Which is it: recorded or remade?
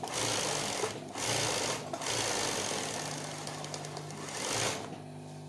recorded